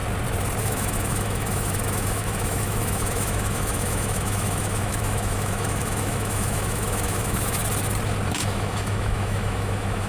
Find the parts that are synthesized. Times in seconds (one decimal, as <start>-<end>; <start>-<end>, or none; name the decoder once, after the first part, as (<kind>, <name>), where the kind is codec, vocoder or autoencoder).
0.6-7.6 (autoencoder, DAC-VAE); 8.3-10.1